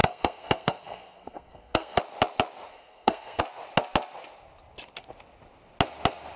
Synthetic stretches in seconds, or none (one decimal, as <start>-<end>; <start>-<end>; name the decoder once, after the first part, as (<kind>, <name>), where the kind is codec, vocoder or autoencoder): 0.0-2.0 (codec, SNAC); 2.7-3.4